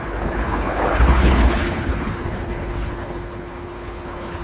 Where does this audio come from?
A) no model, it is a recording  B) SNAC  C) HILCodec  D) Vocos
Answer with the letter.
C